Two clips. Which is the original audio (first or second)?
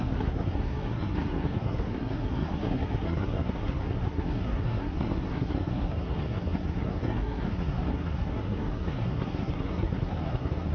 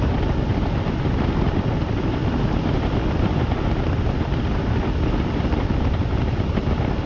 second